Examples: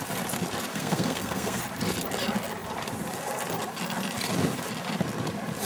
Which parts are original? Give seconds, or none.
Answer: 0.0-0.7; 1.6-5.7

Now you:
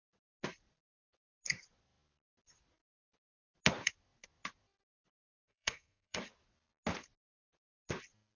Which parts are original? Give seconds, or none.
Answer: 0.0-5.4; 6.2-8.4

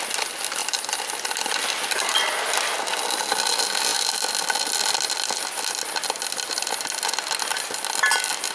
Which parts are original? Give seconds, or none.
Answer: 0.0-8.5

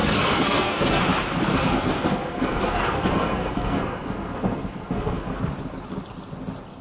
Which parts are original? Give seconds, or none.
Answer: 1.0-1.5; 5.4-6.8

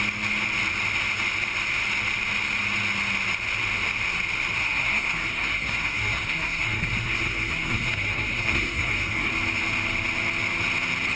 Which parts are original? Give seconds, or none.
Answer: 0.0-4.6; 9.3-11.2

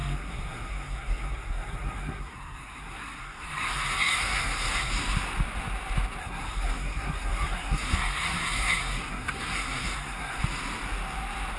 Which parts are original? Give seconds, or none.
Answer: 4.9-6.2; 10.4-11.6